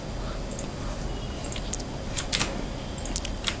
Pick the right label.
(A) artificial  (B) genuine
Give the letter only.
B